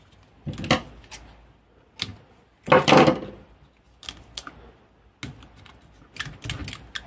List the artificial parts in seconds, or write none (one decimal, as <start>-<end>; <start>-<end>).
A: none

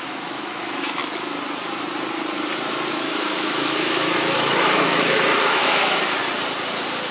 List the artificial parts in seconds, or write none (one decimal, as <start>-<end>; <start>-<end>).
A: 0.0-1.0; 2.9-6.2

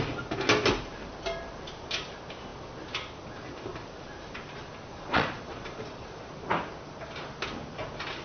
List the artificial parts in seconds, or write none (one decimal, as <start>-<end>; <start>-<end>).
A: 4.9-6.2

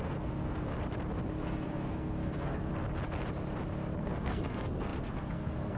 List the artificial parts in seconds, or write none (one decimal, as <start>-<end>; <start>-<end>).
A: 0.0-0.7; 1.4-2.7; 4.0-5.8